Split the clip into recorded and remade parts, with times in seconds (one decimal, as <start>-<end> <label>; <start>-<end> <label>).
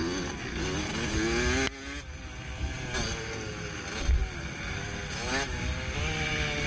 0.0-6.7 recorded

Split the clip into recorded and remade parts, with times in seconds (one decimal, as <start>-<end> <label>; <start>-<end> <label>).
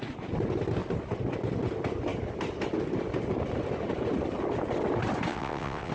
0.0-5.3 recorded; 5.3-5.9 remade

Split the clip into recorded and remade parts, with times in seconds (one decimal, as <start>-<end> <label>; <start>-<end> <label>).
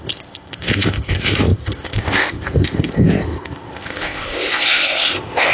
0.0-5.5 remade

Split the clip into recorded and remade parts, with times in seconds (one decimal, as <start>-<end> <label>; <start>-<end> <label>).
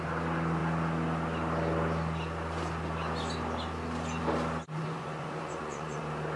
0.0-4.8 recorded; 4.8-6.0 remade; 6.0-6.4 recorded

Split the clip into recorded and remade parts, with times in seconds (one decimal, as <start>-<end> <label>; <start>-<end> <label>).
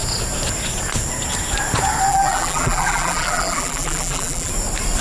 0.0-2.1 recorded; 2.1-4.5 remade; 4.5-5.0 recorded